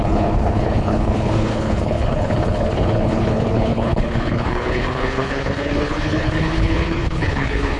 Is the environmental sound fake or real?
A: fake